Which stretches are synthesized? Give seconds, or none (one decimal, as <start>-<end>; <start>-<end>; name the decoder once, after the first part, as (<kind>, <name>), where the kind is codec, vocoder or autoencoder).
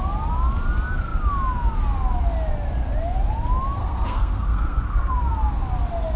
3.8-5.1 (codec, SNAC)